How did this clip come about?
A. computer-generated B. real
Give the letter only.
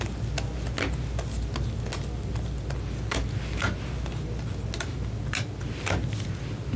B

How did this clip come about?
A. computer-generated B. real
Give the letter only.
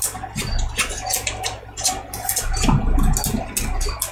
B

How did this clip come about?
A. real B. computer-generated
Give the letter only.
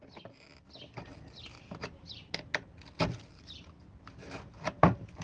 A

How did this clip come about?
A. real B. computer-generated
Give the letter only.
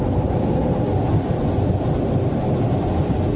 A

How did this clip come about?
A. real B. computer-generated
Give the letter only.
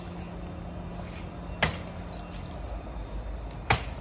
A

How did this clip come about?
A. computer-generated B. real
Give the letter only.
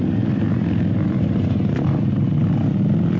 B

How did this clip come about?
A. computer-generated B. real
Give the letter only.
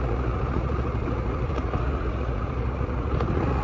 A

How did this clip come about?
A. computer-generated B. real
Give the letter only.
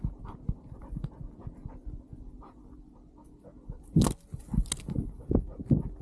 B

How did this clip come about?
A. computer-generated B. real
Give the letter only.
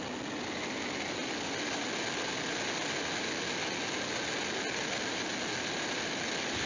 B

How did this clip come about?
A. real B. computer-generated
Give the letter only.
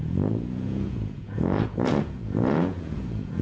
B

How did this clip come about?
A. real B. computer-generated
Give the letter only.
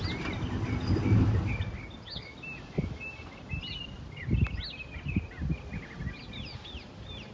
A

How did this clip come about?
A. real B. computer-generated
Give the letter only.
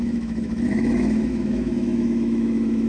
B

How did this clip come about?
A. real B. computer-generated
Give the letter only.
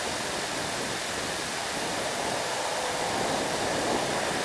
A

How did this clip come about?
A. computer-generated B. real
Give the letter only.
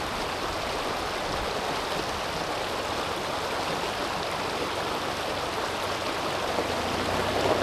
B